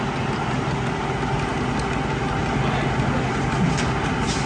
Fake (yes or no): no